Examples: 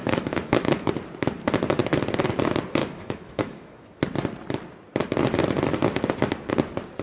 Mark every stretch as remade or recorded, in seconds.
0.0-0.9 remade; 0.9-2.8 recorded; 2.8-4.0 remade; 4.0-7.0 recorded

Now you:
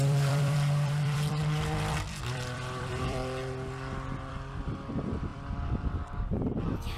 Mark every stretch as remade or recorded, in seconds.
0.0-3.2 remade; 3.2-4.3 recorded; 4.3-7.0 remade

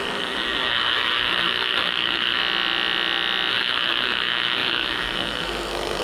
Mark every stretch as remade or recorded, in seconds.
0.0-2.4 remade; 2.4-3.5 recorded; 3.5-6.0 remade

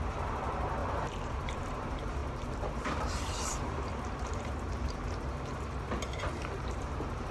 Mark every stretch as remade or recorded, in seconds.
0.0-0.8 remade; 0.8-1.3 recorded; 1.3-2.2 remade; 2.2-2.7 recorded; 2.7-5.0 remade; 5.0-6.1 recorded; 6.1-7.3 remade

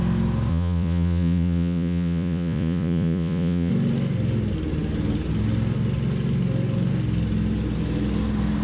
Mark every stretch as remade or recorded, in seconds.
0.0-0.5 recorded; 0.5-3.7 remade; 3.7-8.6 recorded